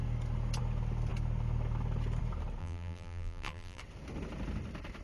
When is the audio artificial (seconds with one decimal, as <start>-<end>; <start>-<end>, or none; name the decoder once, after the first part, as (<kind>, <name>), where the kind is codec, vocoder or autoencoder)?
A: 2.6-3.8 (vocoder, BigVGAN v2)